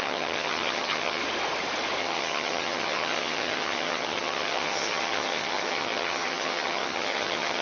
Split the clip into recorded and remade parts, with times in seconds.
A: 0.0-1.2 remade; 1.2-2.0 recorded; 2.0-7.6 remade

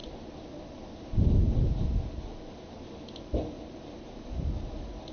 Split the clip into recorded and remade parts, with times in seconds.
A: 0.0-5.1 recorded